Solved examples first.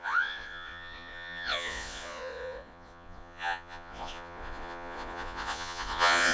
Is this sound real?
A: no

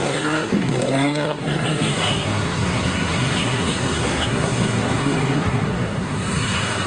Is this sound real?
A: no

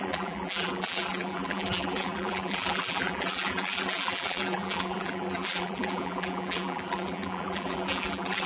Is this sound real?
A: no